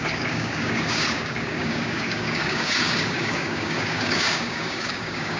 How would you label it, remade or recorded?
remade